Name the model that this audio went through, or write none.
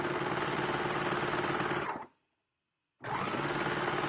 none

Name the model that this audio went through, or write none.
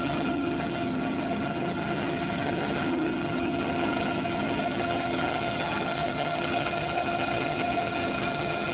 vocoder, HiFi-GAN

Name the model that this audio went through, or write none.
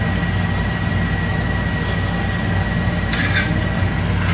none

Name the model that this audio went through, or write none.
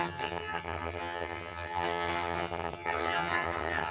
vocoder, HiFi-GAN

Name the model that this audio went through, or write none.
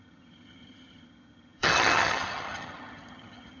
vocoder, HiFi-GAN